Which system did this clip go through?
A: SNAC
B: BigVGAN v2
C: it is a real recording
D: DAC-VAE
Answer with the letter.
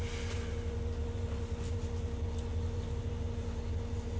C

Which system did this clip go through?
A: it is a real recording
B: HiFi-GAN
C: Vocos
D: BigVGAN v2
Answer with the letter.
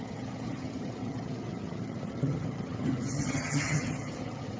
B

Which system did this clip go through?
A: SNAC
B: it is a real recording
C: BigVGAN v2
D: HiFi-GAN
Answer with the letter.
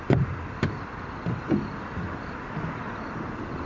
B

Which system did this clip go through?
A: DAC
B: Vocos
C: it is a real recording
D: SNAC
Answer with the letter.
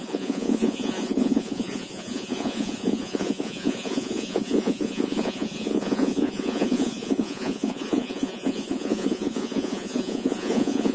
B